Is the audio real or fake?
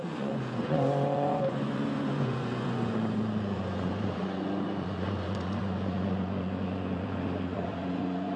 fake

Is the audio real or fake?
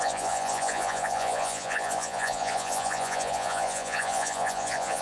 fake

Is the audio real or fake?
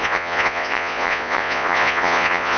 fake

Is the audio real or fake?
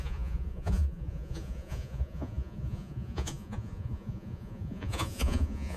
fake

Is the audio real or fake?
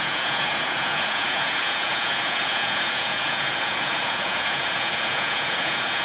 fake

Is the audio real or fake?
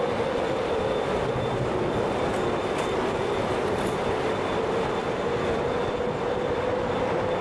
real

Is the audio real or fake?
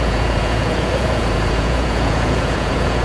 fake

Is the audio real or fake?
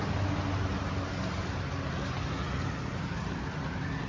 real